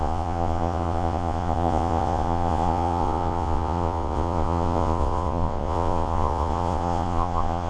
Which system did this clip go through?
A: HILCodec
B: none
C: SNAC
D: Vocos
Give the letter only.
D